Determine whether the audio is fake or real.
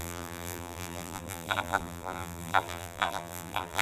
fake